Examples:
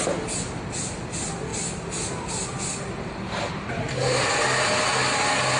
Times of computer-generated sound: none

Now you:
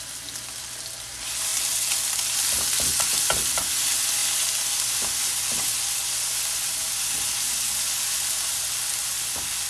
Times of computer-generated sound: none

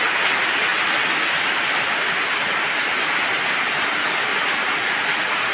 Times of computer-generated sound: 4.3-5.5 (vocoder, Vocos)

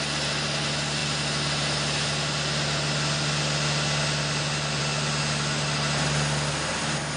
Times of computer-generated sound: none

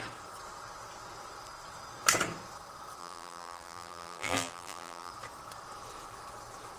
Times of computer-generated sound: 3.0-5.1 (vocoder, BigVGAN v2)

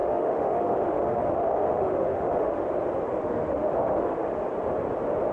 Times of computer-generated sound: 0.0-2.6 (autoencoder, DAC-VAE); 3.1-4.4